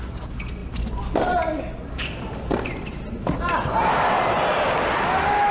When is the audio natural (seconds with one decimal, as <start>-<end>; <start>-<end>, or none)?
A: 0.0-5.5